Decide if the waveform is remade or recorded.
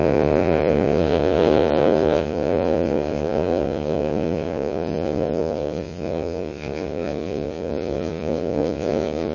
remade